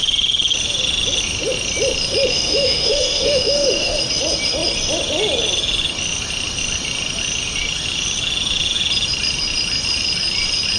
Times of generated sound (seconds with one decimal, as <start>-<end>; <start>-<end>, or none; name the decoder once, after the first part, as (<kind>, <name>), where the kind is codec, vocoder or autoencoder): 2.3-4.0 (autoencoder, DAC-VAE)